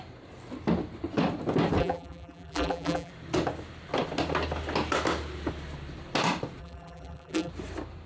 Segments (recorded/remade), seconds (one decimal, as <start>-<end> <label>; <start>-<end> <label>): 0.0-1.8 recorded; 1.8-3.1 remade; 3.1-6.6 recorded; 6.6-7.5 remade; 7.5-8.1 recorded